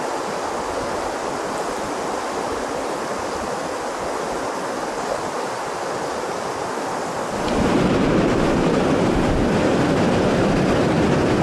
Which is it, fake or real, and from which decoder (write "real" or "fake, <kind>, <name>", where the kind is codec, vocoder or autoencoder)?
real